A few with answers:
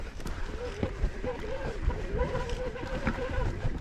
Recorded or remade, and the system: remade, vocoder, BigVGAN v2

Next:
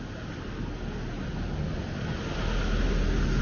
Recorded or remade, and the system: recorded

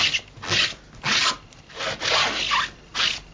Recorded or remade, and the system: recorded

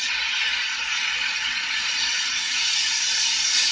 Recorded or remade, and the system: remade, vocoder, Vocos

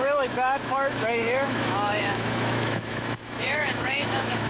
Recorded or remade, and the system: remade, autoencoder, DAC-VAE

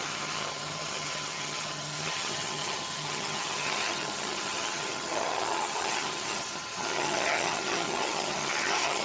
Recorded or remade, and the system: remade, vocoder, HiFi-GAN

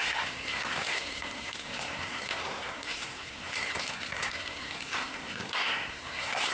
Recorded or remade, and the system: remade, codec, SNAC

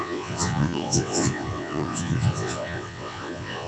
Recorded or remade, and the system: remade, vocoder, WaveNeXt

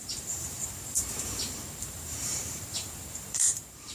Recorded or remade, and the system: remade, vocoder, BigVGAN v2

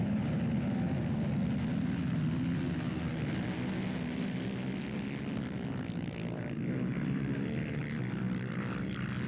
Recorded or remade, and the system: recorded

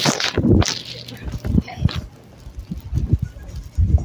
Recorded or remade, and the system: recorded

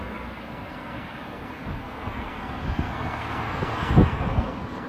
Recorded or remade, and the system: remade, codec, SNAC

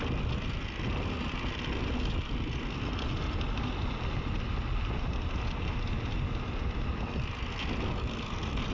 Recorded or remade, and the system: recorded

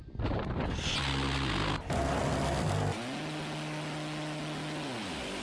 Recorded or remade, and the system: recorded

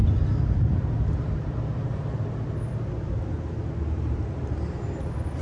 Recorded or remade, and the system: recorded